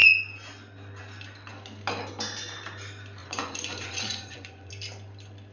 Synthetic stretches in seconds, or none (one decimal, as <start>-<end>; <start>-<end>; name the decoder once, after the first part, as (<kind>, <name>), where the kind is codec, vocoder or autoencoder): 3.2-4.7 (vocoder, Vocos)